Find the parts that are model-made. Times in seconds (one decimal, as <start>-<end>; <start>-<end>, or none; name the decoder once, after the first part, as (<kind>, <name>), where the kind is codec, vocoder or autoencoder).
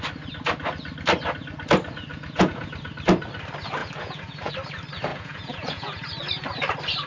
2.1-2.7 (vocoder, Vocos); 3.8-4.5; 5.1-6.1